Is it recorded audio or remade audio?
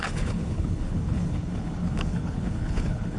remade